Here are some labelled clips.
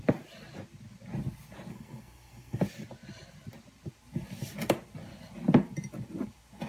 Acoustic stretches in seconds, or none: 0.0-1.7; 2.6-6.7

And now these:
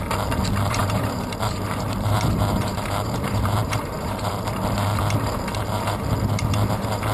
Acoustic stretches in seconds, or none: 0.0-0.8; 4.3-7.1

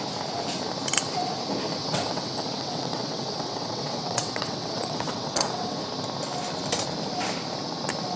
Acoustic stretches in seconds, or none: 0.0-1.8; 5.8-8.2